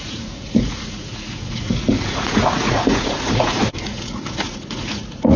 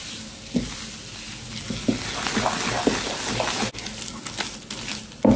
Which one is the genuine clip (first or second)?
second